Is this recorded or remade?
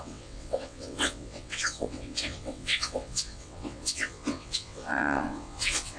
remade